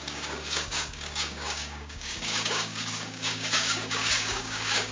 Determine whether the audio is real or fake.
fake